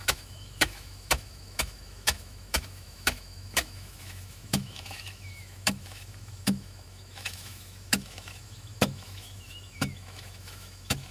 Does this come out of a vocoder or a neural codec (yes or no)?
yes